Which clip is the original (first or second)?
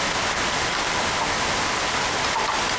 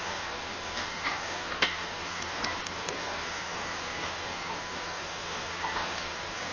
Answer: first